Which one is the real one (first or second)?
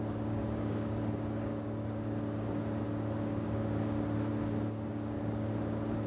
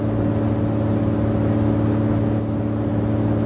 second